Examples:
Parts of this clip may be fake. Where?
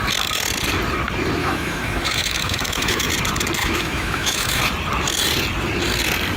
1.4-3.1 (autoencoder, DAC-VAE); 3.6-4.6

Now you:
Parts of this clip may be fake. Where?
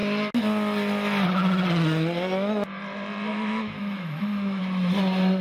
3.3-4.6 (autoencoder, DAC-VAE)